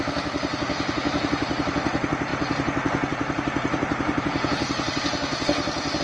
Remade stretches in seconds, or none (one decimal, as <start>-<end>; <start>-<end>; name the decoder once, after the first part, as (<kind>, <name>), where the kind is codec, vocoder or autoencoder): none